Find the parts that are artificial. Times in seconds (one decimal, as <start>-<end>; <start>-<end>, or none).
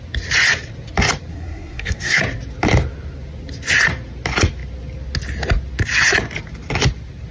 1.3-2.2